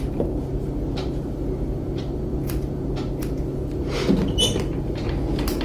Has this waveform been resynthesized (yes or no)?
no